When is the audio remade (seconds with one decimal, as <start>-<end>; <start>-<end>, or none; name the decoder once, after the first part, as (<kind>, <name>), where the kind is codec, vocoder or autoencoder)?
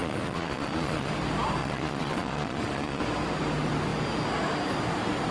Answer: 0.0-1.1 (vocoder, Vocos); 1.6-3.0